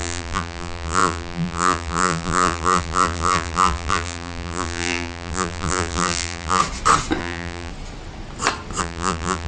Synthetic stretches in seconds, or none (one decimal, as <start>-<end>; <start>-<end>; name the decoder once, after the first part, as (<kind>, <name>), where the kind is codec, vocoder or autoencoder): 0.0-6.6 (vocoder, BigVGAN v2); 7.2-7.7; 8.8-9.5